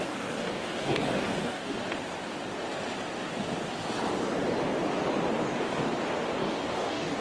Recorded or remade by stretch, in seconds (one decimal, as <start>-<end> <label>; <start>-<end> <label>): 0.0-1.8 remade; 1.8-5.4 recorded; 5.4-5.9 remade; 5.9-6.4 recorded; 6.4-7.2 remade